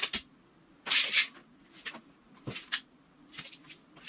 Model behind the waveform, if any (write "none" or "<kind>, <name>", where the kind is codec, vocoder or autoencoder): none